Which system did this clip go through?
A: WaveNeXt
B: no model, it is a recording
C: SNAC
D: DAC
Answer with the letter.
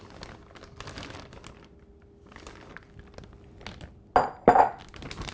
B